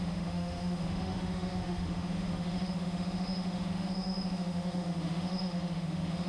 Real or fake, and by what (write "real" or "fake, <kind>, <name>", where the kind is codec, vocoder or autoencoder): fake, autoencoder, DAC-VAE